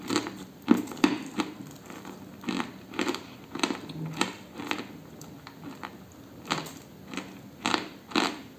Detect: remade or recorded recorded